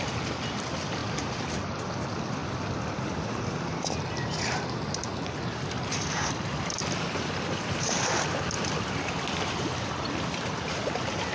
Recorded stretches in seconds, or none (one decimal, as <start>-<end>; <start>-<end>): 2.4-2.9; 5.1-6.3